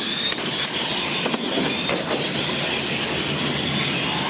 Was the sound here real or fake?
real